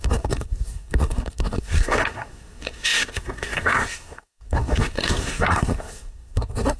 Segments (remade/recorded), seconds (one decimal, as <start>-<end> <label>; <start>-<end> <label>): 0.0-6.8 remade